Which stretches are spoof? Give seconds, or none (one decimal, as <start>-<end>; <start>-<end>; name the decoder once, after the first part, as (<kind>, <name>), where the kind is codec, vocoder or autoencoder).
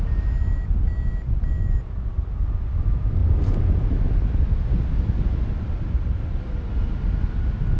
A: none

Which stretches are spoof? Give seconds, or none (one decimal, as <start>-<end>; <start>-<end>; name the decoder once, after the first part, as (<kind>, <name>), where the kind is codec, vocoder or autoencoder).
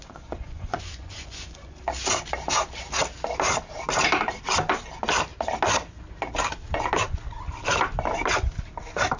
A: 0.0-1.9 (vocoder, Vocos)